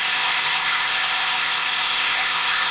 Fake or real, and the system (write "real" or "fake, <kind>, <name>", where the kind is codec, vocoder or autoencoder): fake, codec, ZipCodec